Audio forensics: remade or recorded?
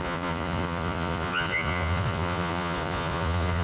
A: remade